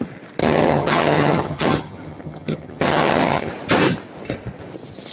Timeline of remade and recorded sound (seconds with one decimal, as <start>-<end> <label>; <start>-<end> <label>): 0.0-0.4 recorded; 0.4-3.5 remade; 3.5-5.1 recorded